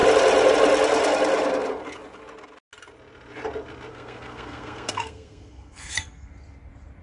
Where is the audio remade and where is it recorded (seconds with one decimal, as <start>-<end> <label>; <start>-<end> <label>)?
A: 0.0-3.9 recorded; 3.9-6.3 remade; 6.3-7.0 recorded